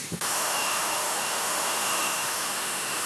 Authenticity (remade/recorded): remade